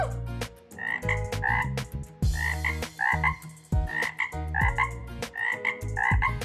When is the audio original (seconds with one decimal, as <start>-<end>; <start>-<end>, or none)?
0.0-5.0; 5.8-6.4